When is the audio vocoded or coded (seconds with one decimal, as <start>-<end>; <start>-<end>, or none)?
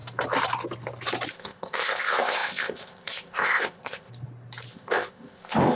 1.3-4.1; 4.7-5.8